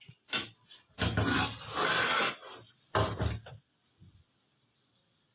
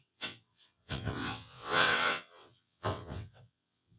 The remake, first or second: second